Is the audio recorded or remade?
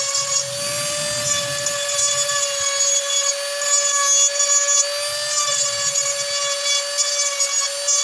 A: recorded